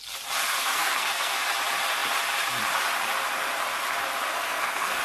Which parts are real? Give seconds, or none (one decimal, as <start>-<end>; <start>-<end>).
0.0-0.5; 1.3-4.3